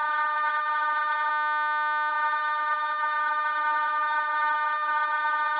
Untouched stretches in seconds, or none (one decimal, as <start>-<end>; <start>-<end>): 1.3-2.1